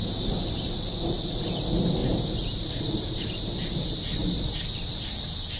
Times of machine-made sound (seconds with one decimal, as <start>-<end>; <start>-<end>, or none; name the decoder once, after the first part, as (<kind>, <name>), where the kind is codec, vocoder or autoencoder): 2.0-3.3 (vocoder, BigVGAN v2); 4.1-4.6